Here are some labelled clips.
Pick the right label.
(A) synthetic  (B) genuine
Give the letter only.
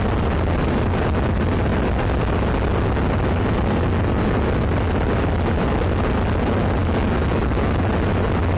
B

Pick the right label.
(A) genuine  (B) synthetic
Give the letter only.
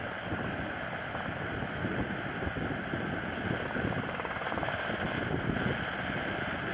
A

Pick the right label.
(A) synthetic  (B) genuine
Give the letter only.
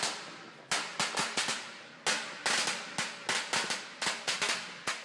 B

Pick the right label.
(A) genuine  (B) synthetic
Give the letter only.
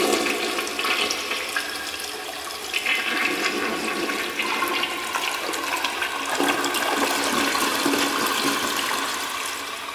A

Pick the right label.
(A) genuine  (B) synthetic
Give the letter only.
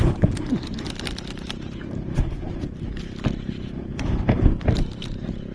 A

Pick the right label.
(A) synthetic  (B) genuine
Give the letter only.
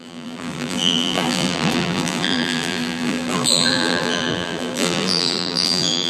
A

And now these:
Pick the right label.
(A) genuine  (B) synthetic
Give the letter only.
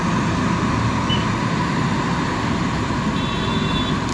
A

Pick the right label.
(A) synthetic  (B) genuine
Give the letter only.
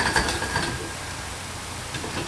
B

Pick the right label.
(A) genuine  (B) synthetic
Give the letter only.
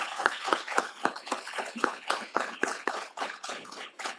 B